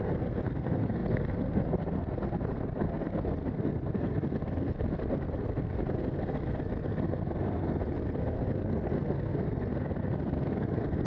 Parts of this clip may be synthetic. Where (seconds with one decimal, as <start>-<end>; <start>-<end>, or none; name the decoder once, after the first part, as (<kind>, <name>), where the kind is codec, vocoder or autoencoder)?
0.0-11.1 (codec, SNAC)